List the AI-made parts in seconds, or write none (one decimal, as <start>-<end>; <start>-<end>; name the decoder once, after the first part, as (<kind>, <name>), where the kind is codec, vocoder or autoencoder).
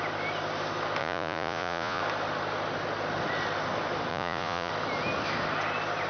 1.0-2.0 (vocoder, Vocos); 4.1-4.7